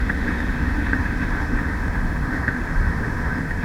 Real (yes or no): no